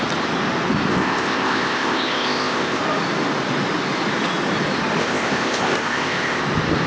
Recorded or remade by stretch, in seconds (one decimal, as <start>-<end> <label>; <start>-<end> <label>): 0.0-0.9 recorded; 0.9-2.8 remade; 2.8-5.0 recorded; 5.0-6.4 remade; 6.4-6.9 recorded